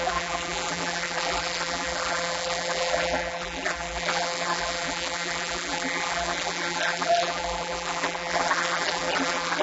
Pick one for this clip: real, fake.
fake